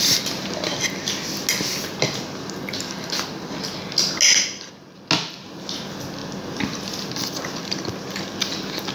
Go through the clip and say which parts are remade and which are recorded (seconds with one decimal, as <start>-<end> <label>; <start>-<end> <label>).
0.0-8.9 recorded